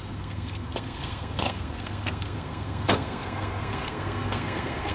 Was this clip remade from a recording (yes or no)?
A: yes